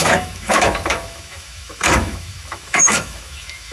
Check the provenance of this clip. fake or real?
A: fake